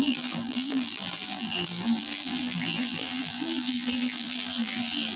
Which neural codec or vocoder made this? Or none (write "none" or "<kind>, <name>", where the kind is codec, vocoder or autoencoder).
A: vocoder, BigVGAN v2